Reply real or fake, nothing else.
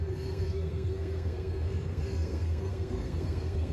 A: fake